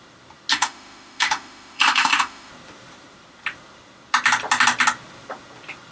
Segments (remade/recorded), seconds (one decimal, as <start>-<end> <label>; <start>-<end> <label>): 0.0-0.5 recorded; 0.5-2.5 remade; 2.5-5.9 recorded